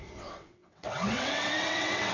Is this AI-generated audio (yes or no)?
yes